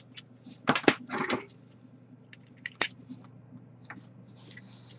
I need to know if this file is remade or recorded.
recorded